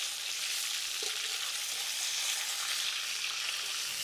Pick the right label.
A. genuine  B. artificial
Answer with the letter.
A